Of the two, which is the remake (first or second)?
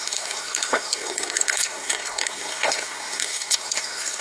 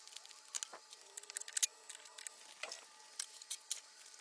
first